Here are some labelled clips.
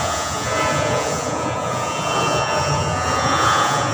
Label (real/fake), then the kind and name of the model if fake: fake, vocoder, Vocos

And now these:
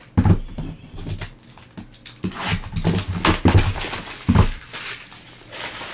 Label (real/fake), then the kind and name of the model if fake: real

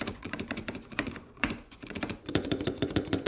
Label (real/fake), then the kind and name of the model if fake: fake, vocoder, Vocos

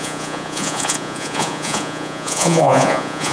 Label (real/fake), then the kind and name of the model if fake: fake, vocoder, Vocos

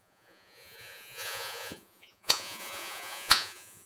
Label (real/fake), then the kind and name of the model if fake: fake, vocoder, Vocos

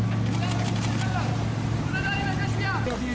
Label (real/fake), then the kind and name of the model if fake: real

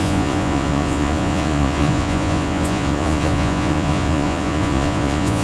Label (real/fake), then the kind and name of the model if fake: fake, vocoder, Vocos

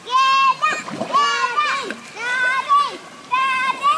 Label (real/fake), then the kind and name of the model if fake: real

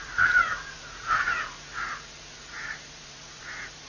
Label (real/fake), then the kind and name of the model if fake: fake, vocoder, Vocos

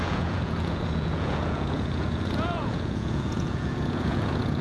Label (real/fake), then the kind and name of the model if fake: fake, vocoder, Vocos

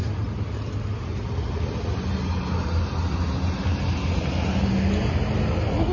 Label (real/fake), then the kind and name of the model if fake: real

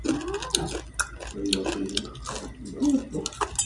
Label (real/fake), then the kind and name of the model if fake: real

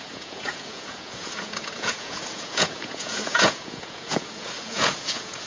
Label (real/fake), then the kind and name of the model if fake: fake, vocoder, Vocos